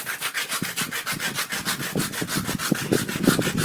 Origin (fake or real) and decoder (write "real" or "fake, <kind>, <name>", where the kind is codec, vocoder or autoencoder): real